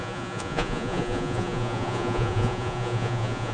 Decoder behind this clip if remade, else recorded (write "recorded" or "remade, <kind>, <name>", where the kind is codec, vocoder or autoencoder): remade, vocoder, Vocos